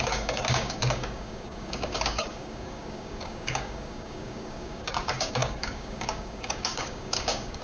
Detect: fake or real fake